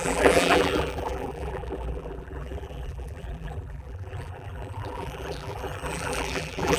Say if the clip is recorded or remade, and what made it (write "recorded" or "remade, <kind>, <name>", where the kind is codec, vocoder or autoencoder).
remade, vocoder, BigVGAN v2